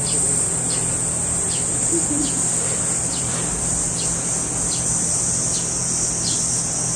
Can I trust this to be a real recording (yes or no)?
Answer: yes